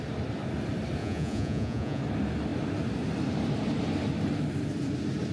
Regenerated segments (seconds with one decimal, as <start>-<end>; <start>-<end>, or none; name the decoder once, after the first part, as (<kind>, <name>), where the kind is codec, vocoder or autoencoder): 1.0-2.0 (vocoder, Vocos)